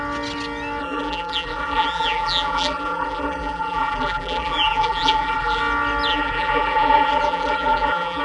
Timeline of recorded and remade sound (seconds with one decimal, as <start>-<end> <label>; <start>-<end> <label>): 0.0-0.8 recorded; 0.8-5.6 remade; 5.6-6.1 recorded; 6.1-8.2 remade